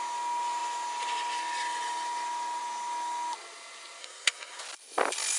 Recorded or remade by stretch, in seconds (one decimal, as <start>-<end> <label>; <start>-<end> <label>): 0.0-4.0 recorded; 4.0-4.6 remade; 4.6-5.4 recorded

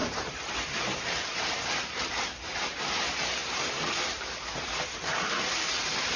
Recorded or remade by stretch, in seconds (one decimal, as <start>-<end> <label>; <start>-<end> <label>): 0.0-6.2 remade

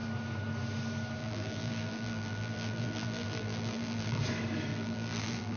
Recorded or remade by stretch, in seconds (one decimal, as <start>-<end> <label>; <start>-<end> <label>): 0.0-1.2 recorded; 1.2-4.2 remade; 4.2-4.7 recorded; 4.7-5.6 remade

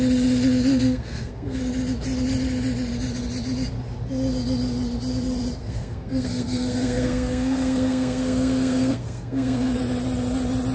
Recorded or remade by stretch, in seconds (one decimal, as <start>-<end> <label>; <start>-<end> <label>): 0.0-0.7 recorded; 0.7-1.6 remade; 1.6-5.6 recorded; 5.6-9.8 remade; 9.8-10.7 recorded

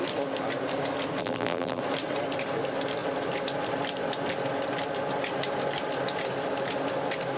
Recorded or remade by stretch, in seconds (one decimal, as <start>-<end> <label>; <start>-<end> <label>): 0.0-1.2 recorded; 1.2-1.8 remade; 1.8-7.4 recorded